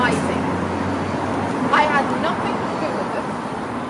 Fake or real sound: real